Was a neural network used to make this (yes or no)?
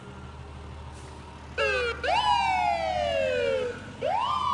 no